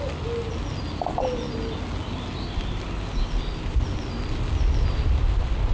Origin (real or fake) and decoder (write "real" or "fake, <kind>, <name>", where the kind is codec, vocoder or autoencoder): real